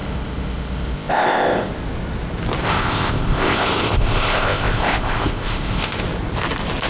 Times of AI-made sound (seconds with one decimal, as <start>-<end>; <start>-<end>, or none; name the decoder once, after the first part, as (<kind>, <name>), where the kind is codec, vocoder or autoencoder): 0.0-1.7 (codec, ZipCodec); 2.6-6.0